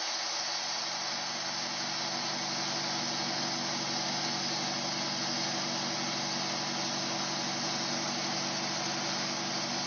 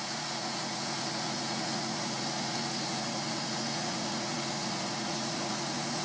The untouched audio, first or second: first